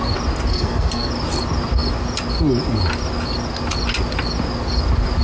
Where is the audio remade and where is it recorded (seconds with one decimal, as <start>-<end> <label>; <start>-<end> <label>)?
0.0-0.5 recorded; 0.5-1.1 remade; 1.1-5.2 recorded